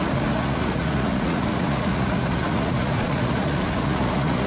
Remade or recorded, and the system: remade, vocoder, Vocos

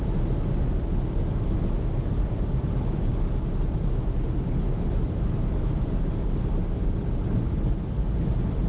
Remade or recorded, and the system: recorded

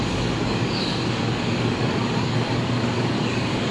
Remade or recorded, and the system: remade, codec, DAC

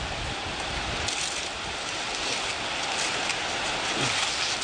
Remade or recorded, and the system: recorded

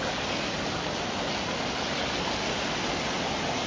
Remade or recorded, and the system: recorded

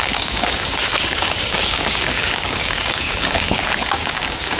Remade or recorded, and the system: remade, codec, DAC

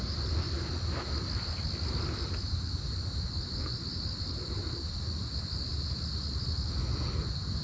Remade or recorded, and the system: recorded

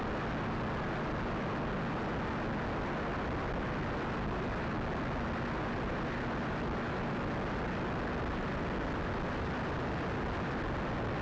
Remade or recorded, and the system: recorded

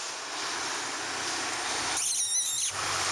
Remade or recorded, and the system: recorded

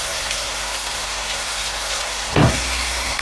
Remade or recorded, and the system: remade, codec, SNAC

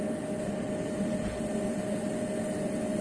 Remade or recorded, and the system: recorded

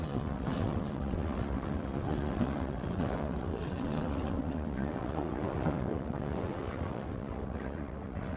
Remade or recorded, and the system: remade, vocoder, WaveNeXt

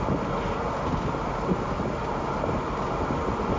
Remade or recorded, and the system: recorded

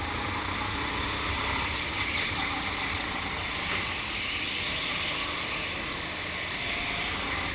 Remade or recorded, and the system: recorded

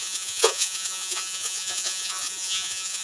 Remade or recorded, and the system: remade, vocoder, Vocos